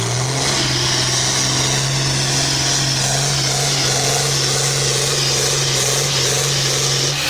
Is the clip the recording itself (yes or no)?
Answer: yes